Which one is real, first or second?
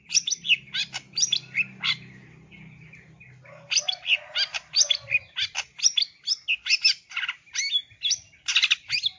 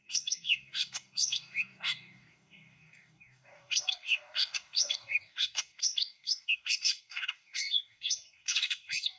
first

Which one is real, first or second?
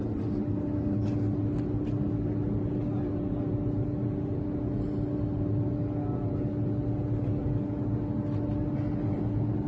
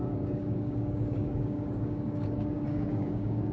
first